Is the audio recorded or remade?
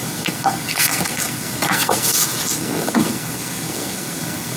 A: remade